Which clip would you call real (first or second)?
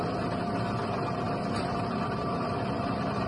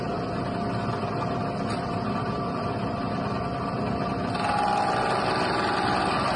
second